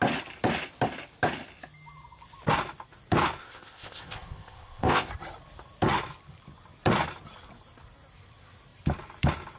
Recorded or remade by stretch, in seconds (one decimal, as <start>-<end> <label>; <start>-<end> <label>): 0.0-3.4 recorded; 3.4-5.1 remade; 5.1-9.6 recorded